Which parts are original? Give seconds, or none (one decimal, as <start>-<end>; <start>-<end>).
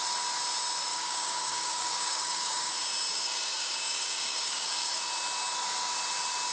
0.0-0.9; 2.7-3.1; 5.0-6.5